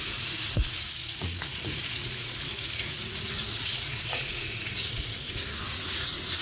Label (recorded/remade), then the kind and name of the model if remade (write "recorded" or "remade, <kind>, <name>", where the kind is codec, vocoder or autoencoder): remade, vocoder, Vocos